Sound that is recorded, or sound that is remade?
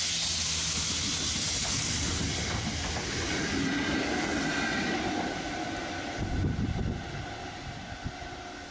recorded